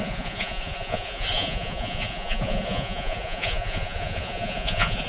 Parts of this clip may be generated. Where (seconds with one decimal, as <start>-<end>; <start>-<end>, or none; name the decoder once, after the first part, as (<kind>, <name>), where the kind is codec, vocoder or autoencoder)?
0.0-5.1 (vocoder, Vocos)